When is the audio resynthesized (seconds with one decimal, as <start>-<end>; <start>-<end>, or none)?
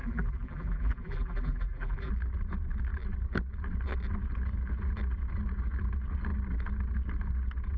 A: 0.0-2.1